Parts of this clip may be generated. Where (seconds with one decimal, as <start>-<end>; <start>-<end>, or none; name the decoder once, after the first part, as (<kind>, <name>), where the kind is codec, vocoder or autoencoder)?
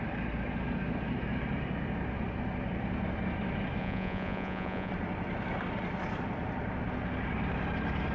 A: 3.8-4.9 (vocoder, Vocos)